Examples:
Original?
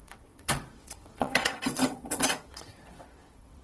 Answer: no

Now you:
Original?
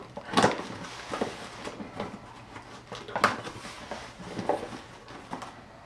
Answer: yes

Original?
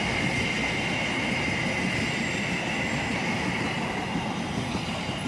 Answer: yes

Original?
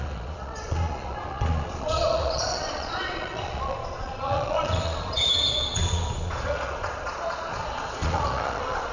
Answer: no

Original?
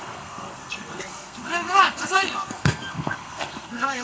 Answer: no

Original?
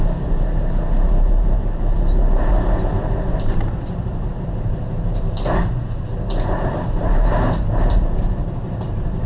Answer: no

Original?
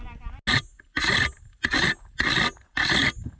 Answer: yes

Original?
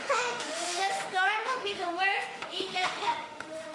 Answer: no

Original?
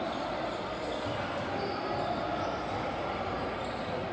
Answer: yes